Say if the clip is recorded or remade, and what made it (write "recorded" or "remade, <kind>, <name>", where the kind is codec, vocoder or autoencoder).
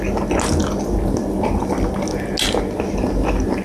recorded